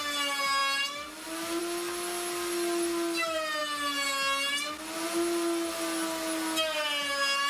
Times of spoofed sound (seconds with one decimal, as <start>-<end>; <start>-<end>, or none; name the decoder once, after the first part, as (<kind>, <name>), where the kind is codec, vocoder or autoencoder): none